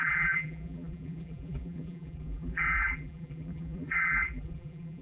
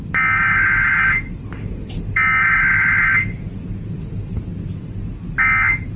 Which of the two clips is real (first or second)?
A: second